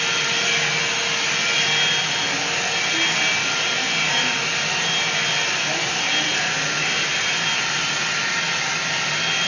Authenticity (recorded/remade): recorded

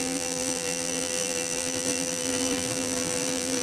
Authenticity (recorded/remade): remade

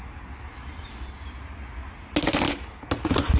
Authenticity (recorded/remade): recorded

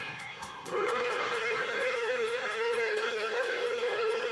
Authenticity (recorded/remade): remade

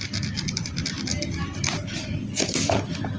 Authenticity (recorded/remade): recorded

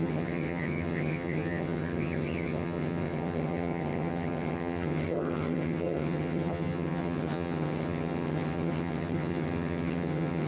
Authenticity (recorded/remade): remade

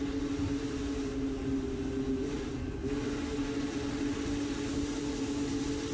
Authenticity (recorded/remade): recorded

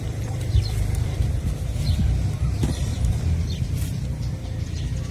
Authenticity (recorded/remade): remade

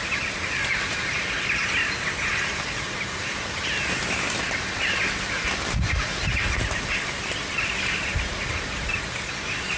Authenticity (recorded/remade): recorded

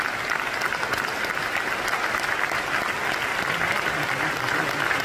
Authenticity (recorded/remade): recorded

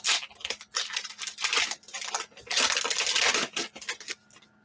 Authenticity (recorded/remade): recorded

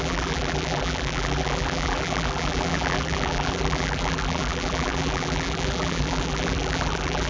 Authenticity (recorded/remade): remade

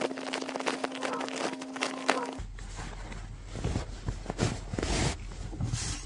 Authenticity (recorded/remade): recorded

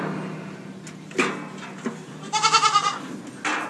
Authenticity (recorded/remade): recorded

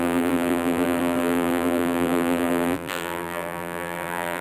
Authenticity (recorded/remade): remade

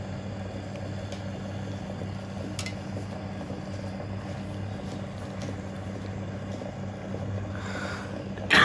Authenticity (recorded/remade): recorded